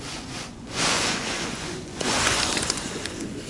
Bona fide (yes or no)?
no